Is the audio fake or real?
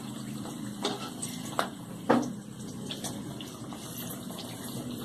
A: fake